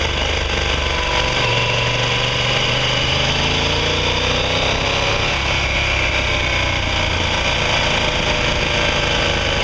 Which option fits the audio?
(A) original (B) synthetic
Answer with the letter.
A